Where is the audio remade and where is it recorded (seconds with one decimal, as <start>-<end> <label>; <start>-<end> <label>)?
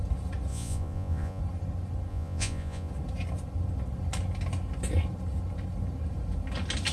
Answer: 0.0-0.5 recorded; 0.5-1.4 remade; 1.4-2.1 recorded; 2.1-2.9 remade; 2.9-6.9 recorded